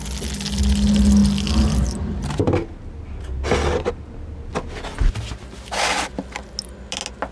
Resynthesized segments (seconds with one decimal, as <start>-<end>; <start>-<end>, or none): none